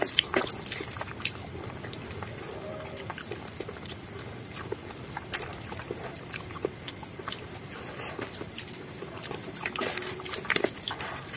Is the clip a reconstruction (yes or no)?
no